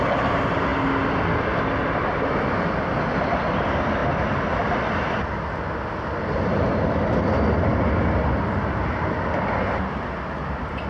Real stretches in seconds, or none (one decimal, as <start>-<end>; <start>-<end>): 0.0-10.9